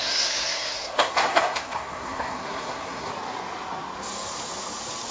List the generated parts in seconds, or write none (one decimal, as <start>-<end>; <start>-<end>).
0.0-3.1